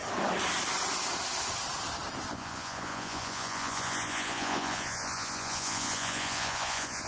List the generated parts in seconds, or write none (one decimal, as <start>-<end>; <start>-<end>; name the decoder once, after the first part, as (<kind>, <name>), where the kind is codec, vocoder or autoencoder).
2.3-7.1 (vocoder, Vocos)